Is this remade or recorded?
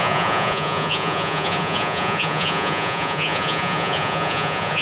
remade